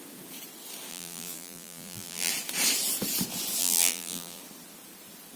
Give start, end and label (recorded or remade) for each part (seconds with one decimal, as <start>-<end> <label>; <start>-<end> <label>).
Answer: 0.0-0.9 recorded; 0.9-2.3 remade; 2.3-3.6 recorded; 3.6-4.4 remade; 4.4-5.4 recorded